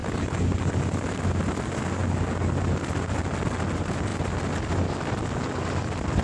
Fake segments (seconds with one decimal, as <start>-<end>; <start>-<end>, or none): none